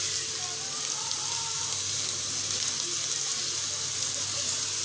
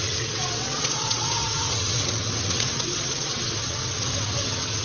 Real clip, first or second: first